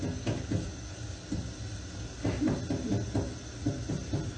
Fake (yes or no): no